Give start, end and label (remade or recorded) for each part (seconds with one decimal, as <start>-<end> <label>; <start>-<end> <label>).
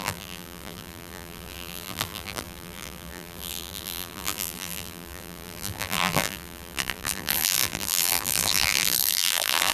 0.0-9.7 remade